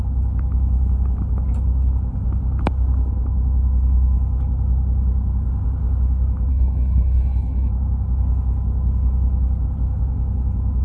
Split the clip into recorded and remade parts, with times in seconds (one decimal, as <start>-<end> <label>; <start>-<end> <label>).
0.0-6.5 recorded; 6.5-7.7 remade; 7.7-10.8 recorded